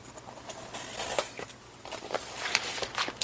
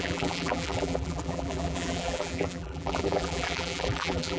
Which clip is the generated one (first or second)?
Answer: second